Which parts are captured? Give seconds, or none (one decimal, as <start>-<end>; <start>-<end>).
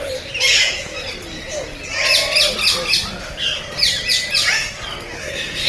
0.0-5.2